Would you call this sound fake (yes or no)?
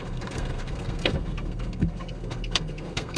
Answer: yes